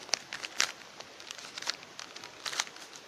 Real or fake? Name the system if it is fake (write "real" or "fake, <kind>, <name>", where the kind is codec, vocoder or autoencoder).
real